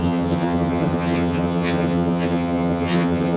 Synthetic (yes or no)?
yes